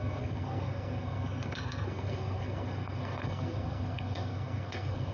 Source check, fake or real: fake